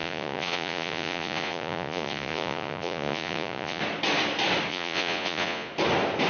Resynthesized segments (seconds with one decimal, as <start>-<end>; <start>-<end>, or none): 0.0-3.8; 4.7-5.7